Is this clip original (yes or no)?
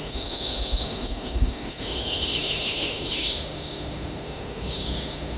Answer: no